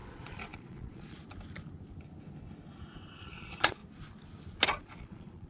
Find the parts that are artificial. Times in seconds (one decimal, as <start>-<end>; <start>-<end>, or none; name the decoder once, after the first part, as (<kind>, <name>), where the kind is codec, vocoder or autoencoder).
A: 0.0-1.2 (vocoder, Vocos); 3.2-3.8; 4.8-5.5